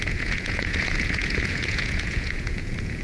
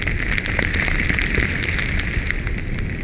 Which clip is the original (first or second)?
second